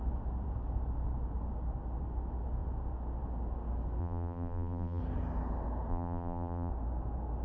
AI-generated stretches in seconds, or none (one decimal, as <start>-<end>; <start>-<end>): 4.0-5.0; 5.9-6.7